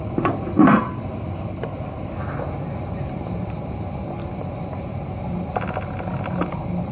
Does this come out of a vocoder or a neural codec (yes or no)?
no